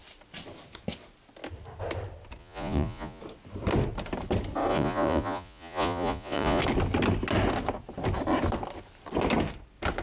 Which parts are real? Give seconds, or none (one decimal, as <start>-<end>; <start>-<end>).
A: 0.0-2.4; 3.2-4.7; 6.6-10.0